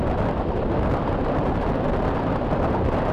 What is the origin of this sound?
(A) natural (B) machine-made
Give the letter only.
A